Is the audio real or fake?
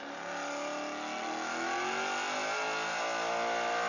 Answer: real